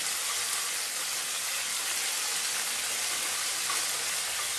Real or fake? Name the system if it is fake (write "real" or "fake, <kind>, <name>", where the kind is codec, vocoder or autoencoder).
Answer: real